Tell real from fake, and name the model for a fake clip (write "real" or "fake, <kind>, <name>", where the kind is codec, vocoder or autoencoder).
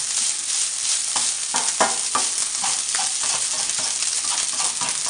real